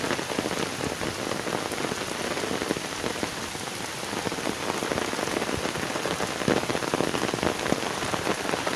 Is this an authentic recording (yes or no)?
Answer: yes